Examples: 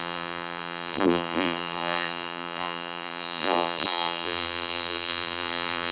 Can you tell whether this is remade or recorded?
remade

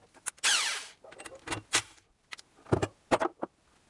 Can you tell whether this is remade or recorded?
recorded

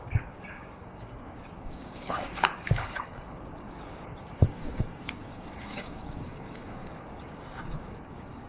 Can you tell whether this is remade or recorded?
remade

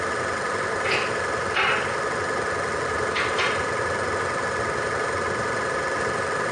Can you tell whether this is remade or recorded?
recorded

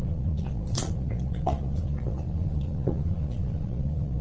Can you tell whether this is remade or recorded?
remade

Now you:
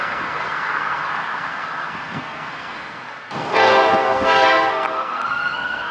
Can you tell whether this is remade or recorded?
remade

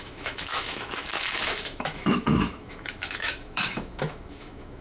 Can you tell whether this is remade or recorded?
remade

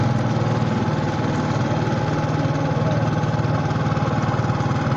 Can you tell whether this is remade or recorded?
recorded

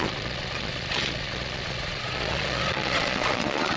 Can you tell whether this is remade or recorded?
remade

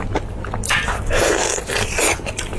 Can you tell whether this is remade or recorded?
recorded